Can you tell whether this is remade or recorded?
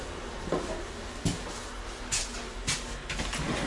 recorded